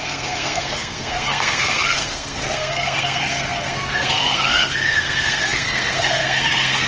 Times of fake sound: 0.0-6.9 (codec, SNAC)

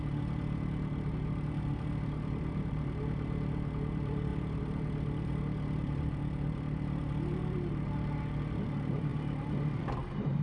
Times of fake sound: 0.0-10.4 (vocoder, BigVGAN v2)

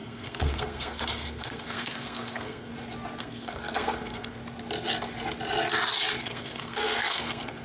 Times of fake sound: 0.0-2.7 (codec, SNAC); 3.2-4.4; 6.2-7.6

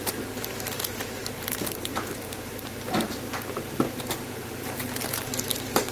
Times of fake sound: 0.0-5.9 (vocoder, BigVGAN v2)